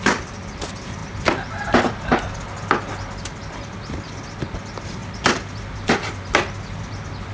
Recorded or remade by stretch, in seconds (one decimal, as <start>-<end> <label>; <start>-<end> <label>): 0.0-7.3 recorded